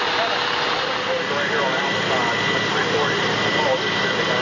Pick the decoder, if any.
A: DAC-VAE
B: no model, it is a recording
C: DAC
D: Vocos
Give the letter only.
B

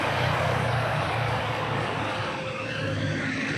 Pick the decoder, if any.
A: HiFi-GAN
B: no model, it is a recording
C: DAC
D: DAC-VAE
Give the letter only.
C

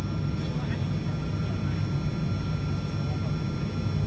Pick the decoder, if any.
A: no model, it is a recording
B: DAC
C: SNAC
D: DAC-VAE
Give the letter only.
A